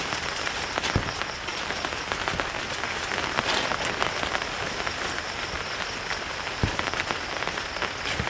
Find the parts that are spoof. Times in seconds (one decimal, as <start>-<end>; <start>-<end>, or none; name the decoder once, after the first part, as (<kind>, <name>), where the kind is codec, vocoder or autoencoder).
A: none